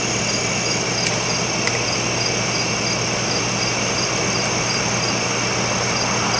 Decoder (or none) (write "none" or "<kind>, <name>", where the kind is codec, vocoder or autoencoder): none